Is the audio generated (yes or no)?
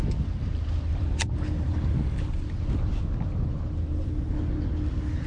no